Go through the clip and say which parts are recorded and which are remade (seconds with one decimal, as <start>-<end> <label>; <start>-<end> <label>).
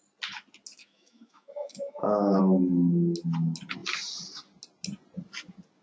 0.0-0.8 recorded; 0.8-2.4 remade; 2.4-5.8 recorded